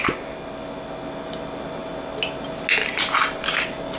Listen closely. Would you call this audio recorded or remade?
recorded